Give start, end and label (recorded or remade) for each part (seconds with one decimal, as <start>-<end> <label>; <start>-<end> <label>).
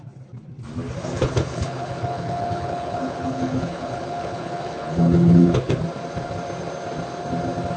0.0-1.1 recorded; 1.1-5.8 remade; 5.8-7.8 recorded